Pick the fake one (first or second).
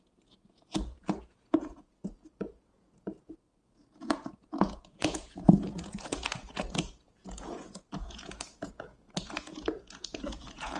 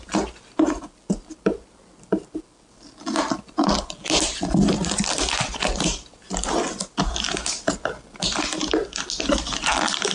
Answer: first